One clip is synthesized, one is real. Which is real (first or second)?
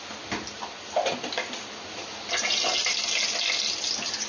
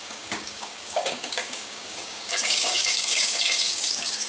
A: first